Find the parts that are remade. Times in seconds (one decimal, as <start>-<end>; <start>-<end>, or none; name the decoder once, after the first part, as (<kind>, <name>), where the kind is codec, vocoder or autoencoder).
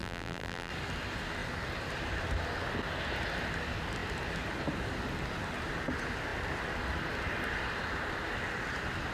0.0-0.7 (vocoder, BigVGAN v2)